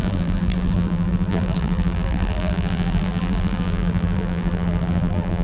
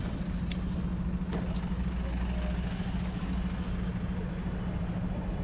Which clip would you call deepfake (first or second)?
first